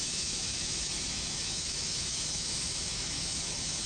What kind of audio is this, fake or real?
fake